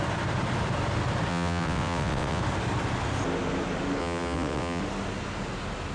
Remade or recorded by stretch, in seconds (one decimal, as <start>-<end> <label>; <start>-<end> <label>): 0.0-1.3 recorded; 1.3-2.4 remade; 2.4-4.0 recorded; 4.0-4.8 remade; 4.8-5.9 recorded